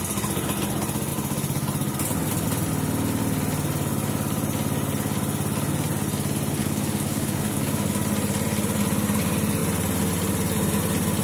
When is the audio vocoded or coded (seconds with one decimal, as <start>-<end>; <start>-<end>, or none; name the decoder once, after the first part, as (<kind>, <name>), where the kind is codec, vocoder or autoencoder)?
6.6-7.9 (codec, DAC)